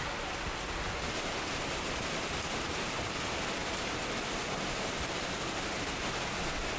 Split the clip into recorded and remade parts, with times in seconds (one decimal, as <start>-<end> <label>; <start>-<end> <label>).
0.0-6.8 recorded